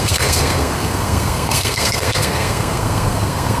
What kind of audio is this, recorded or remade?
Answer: remade